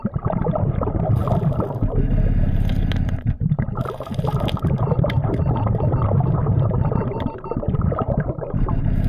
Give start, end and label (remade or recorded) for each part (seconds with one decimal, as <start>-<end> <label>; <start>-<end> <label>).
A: 0.0-1.2 remade; 1.2-2.4 recorded; 2.4-9.1 remade